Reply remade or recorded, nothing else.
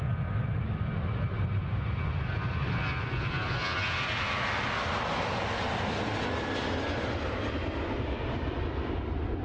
recorded